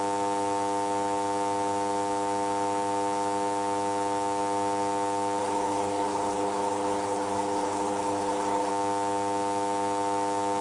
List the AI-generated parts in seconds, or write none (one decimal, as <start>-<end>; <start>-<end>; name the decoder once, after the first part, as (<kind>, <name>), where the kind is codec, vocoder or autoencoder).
5.4-8.7 (codec, HILCodec)